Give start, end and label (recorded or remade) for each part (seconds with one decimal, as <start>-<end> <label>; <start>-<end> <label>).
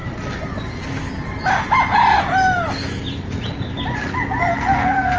0.0-4.5 recorded; 4.5-5.2 remade